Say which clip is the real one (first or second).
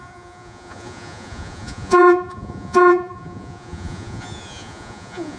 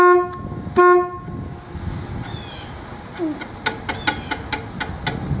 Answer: second